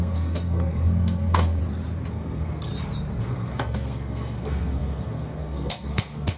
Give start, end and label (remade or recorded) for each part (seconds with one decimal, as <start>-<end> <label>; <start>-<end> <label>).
0.0-1.6 remade; 1.6-2.1 recorded; 2.1-2.7 remade; 2.7-3.2 recorded; 3.2-6.4 remade